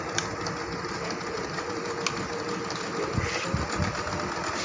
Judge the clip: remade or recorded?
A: recorded